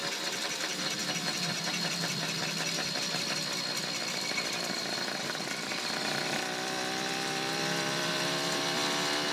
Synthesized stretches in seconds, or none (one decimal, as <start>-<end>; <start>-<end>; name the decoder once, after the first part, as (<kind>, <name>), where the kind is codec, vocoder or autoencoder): 0.0-9.3 (vocoder, BigVGAN v2)